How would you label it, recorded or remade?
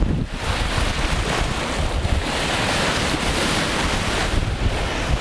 recorded